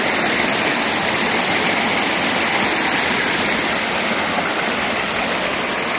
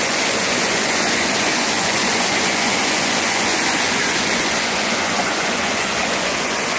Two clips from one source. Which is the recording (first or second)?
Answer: first